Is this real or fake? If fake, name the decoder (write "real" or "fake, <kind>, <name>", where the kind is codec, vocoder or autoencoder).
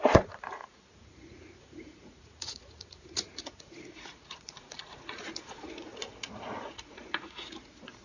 fake, vocoder, Vocos